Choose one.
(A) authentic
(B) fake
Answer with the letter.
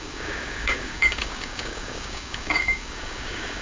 B